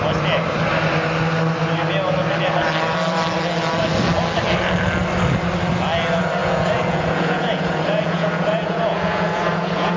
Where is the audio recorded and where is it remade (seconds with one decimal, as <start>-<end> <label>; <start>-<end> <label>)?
0.0-6.4 recorded; 6.4-10.0 remade